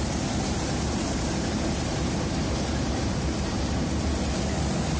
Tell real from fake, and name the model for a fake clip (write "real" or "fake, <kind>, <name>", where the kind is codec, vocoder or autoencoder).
real